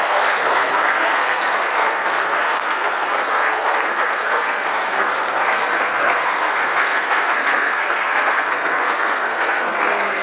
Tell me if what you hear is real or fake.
fake